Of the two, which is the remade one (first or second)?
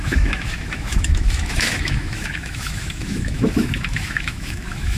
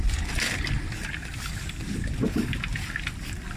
first